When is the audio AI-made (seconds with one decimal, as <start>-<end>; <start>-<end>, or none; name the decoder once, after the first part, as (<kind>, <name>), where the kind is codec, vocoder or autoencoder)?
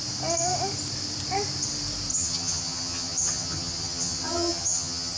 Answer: 2.1-5.2 (vocoder, HiFi-GAN)